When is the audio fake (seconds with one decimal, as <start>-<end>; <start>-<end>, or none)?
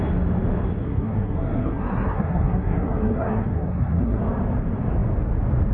0.8-4.2